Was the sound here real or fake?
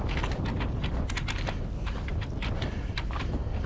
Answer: real